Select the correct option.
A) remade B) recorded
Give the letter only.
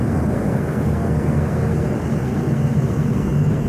A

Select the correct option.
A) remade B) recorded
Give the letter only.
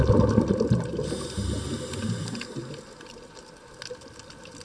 B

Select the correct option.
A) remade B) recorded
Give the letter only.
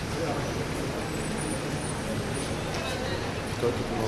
B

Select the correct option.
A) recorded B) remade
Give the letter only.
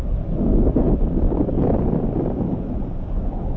A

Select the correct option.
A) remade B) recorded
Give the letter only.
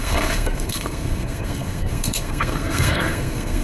A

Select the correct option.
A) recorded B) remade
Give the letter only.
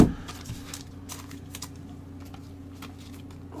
A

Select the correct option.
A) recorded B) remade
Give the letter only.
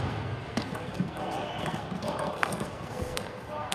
B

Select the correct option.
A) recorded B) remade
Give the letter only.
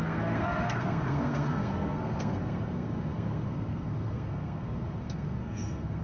B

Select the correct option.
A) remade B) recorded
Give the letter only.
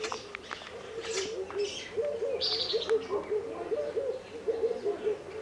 B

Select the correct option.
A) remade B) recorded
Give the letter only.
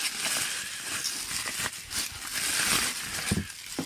B